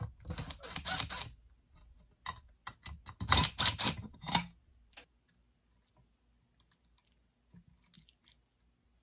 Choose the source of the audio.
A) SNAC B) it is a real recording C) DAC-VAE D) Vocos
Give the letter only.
B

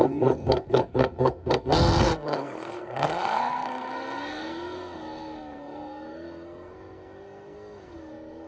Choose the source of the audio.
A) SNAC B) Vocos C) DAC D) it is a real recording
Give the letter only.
A